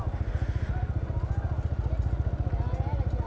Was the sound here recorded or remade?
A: recorded